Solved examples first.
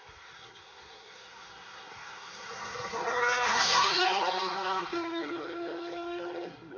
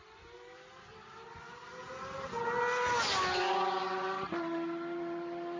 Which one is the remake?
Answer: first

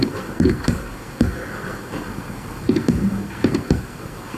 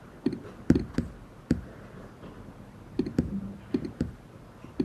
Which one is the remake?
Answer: first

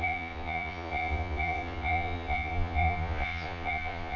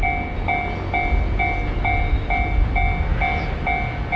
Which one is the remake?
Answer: first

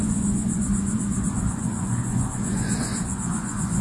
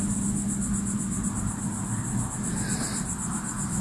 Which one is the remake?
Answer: first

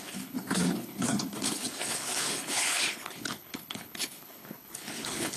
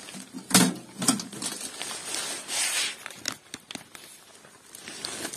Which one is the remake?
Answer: first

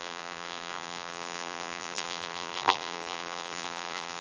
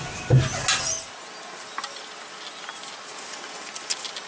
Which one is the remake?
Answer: first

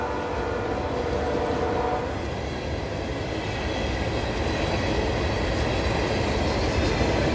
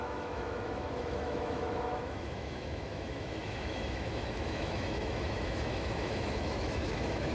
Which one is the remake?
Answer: second